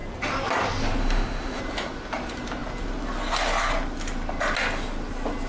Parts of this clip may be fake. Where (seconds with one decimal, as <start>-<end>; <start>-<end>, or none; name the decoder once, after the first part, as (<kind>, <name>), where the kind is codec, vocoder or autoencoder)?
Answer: 1.0-1.6 (autoencoder, DAC-VAE)